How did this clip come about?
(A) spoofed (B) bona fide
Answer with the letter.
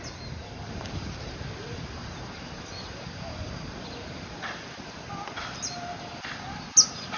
B